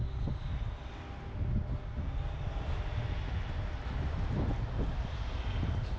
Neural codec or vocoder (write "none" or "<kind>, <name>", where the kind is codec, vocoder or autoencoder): none